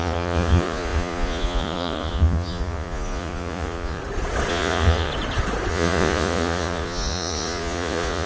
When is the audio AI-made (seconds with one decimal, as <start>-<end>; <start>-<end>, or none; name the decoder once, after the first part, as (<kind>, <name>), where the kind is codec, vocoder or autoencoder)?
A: 0.0-4.0 (vocoder, Vocos); 4.5-5.1; 5.7-8.3

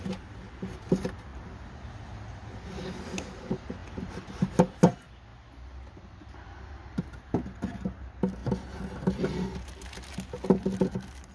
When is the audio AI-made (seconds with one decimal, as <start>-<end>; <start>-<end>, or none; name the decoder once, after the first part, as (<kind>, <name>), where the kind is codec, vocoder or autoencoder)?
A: none